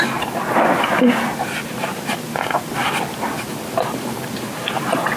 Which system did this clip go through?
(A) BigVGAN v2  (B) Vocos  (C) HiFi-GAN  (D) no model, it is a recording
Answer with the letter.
D